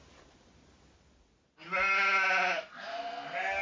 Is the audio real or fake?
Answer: real